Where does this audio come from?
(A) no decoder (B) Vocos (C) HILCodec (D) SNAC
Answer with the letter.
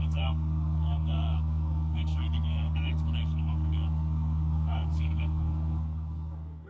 D